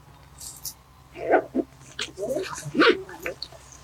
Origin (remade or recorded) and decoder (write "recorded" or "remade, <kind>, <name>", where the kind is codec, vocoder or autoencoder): recorded